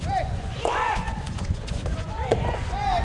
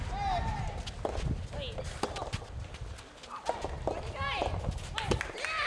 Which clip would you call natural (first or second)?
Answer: second